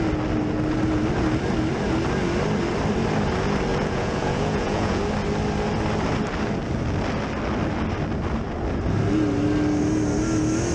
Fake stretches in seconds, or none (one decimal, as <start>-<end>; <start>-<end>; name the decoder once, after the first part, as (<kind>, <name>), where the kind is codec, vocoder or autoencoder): 3.7-5.0 (vocoder, Vocos)